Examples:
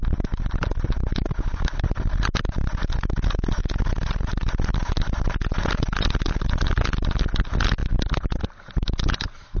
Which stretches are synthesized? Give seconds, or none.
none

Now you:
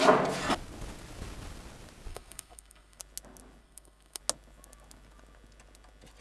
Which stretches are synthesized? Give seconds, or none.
2.1-3.0 (codec, SNAC); 3.6-4.2